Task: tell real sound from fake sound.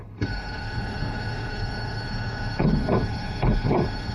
fake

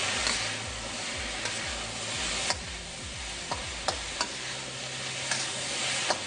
real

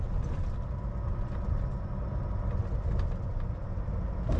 real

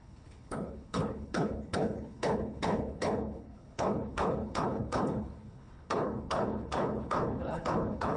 fake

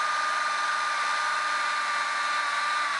real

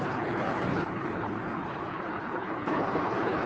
fake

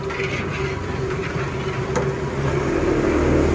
real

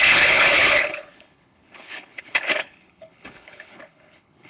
fake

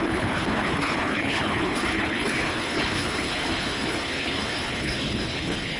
fake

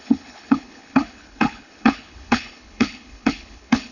fake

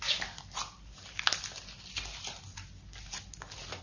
real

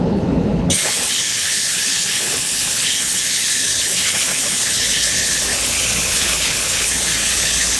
fake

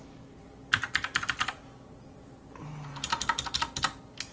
real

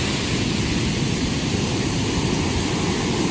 real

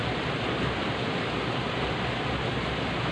real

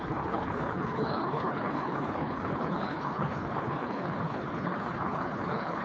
fake